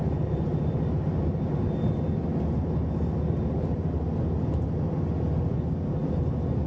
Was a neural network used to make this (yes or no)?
no